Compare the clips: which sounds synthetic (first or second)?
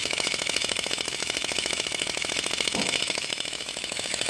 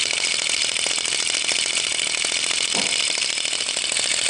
first